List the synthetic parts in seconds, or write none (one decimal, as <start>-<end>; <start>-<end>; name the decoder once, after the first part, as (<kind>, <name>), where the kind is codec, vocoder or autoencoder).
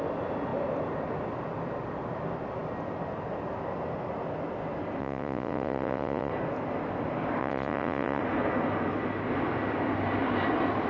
5.0-6.3 (vocoder, Vocos); 7.4-8.2